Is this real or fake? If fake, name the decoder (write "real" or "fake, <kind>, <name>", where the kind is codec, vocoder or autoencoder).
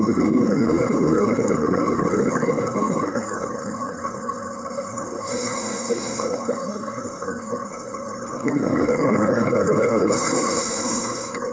fake, codec, SNAC